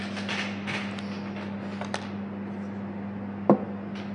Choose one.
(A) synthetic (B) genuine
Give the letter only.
B